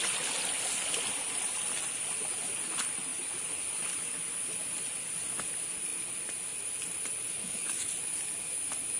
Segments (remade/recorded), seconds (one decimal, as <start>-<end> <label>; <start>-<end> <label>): 0.0-7.3 recorded; 7.3-7.9 remade; 7.9-9.0 recorded